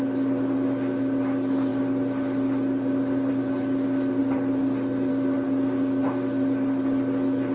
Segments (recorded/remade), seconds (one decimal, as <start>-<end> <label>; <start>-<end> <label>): 0.0-7.5 recorded